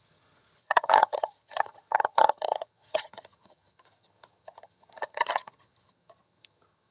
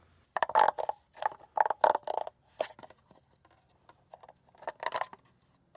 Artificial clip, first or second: first